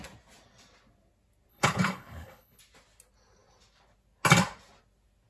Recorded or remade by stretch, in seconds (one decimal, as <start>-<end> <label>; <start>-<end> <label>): 0.0-1.5 recorded; 1.5-2.6 remade; 2.6-5.3 recorded